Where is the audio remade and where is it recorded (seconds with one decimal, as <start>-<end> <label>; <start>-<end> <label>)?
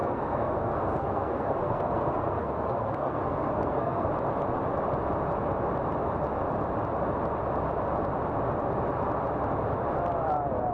0.0-4.1 remade; 4.1-10.7 recorded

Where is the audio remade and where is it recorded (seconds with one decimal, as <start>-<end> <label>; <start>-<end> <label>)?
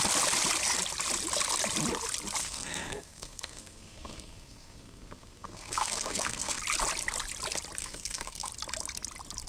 0.0-2.4 recorded; 2.4-6.6 remade; 6.6-7.8 recorded; 7.8-8.5 remade; 8.5-9.5 recorded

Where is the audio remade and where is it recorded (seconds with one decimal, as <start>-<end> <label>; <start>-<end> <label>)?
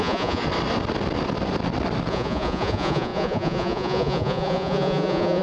0.0-0.4 remade; 0.4-2.1 recorded; 2.1-5.4 remade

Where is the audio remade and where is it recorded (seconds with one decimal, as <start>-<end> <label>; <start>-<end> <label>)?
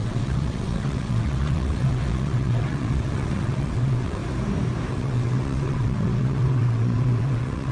0.0-4.2 remade; 4.2-4.9 recorded; 4.9-7.7 remade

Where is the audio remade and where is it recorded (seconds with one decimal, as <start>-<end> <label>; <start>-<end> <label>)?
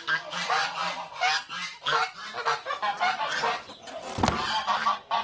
0.0-5.2 recorded